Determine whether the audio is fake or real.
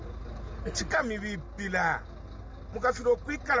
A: real